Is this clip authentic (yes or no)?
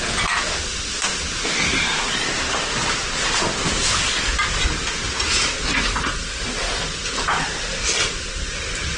yes